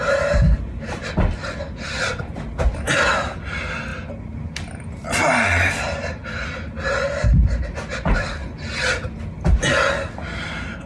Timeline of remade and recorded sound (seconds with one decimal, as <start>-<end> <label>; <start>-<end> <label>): 0.0-10.9 recorded